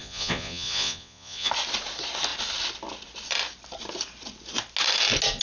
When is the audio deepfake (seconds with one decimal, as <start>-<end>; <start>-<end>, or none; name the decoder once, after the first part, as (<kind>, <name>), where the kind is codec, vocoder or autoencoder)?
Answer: 0.0-1.5 (vocoder, Vocos)